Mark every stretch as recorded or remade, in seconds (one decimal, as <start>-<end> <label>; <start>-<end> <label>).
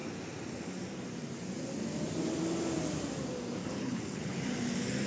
0.0-3.6 recorded; 3.6-4.4 remade; 4.4-5.1 recorded